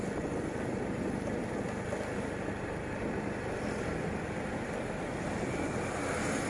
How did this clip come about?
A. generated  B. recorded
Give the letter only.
B